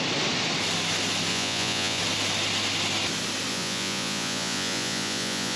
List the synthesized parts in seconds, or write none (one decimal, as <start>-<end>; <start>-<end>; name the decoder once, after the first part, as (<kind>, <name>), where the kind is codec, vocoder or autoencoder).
1.3-2.0 (vocoder, Vocos); 3.5-5.6